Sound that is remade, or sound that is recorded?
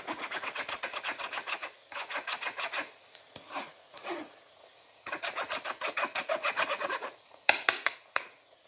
remade